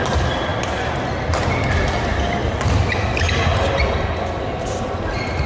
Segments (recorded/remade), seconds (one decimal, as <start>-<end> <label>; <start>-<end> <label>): 0.0-5.5 recorded